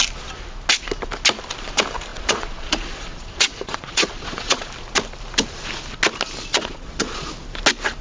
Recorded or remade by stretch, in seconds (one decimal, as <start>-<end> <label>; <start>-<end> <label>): 0.0-2.1 recorded; 2.1-4.7 remade; 4.7-6.5 recorded; 6.5-7.3 remade; 7.3-8.0 recorded